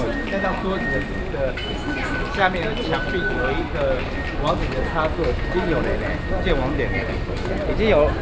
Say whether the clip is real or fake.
real